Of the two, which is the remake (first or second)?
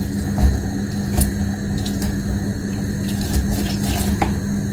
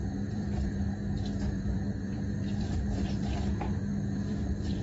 second